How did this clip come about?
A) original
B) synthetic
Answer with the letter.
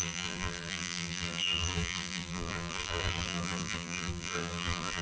B